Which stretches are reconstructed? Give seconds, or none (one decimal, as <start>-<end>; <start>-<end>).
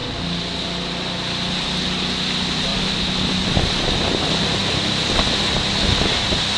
2.7-3.7